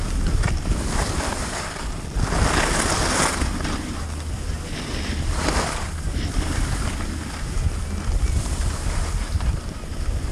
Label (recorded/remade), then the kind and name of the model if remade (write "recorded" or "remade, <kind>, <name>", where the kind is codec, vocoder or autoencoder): recorded